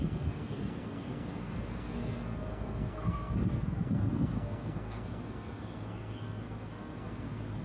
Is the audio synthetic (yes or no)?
yes